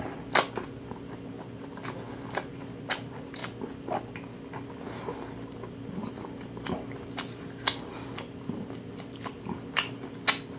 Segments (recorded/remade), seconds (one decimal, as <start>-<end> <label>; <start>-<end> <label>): 0.0-10.6 recorded